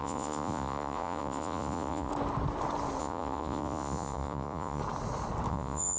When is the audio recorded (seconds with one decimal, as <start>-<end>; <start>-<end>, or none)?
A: 2.1-3.0; 4.8-5.5